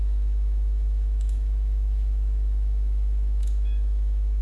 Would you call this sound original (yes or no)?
no